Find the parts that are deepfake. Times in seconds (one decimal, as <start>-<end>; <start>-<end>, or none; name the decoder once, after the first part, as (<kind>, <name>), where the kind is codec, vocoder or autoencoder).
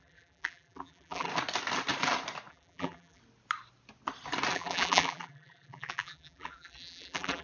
0.0-1.3 (vocoder, BigVGAN v2); 2.5-3.2; 4.5-7.4